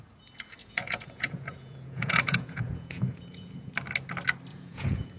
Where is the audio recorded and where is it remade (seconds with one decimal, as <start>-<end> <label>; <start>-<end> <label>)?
0.0-0.6 recorded; 0.6-3.7 remade; 3.7-4.5 recorded; 4.5-5.2 remade